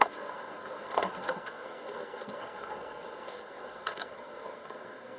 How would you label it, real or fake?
fake